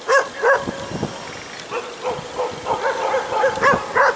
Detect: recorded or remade recorded